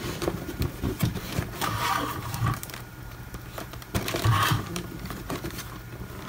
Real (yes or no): no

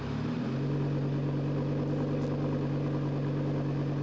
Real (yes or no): yes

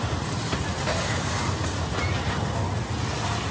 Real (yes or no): yes